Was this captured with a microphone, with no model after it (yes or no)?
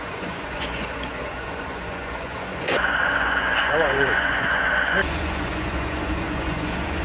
no